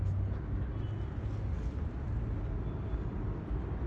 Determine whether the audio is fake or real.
real